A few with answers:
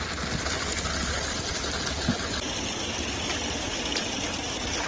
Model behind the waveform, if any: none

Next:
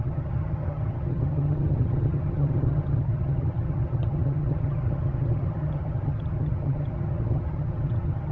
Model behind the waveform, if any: vocoder, HiFi-GAN